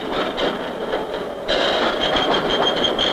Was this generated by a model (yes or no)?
yes